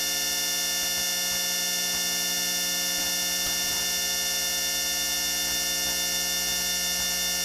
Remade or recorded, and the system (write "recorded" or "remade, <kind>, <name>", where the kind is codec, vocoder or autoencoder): recorded